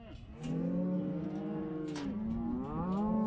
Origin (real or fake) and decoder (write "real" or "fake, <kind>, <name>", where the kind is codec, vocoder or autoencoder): real